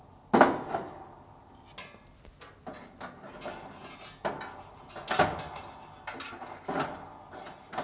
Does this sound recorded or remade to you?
recorded